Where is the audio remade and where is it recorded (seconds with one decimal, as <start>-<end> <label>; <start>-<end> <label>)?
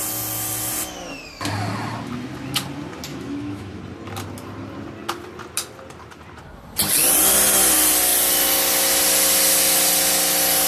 0.0-3.1 recorded; 3.1-3.8 remade; 3.8-10.7 recorded